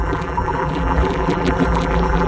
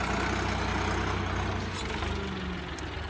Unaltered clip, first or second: second